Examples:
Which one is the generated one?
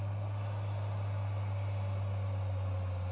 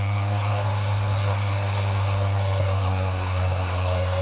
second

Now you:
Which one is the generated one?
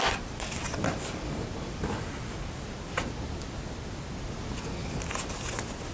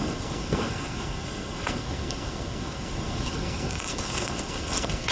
second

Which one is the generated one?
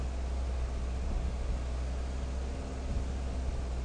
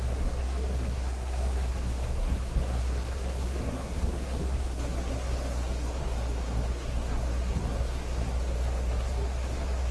second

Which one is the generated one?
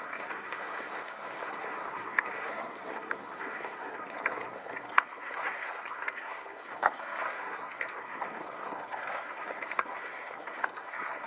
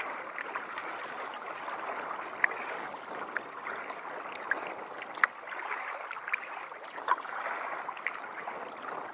first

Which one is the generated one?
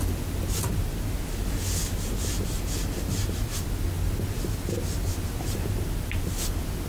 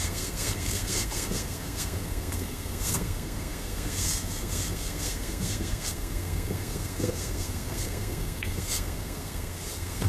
second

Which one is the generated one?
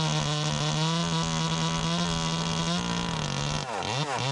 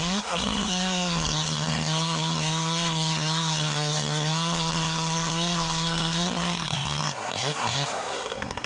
second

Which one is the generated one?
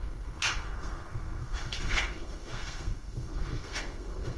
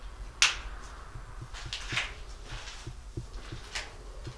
first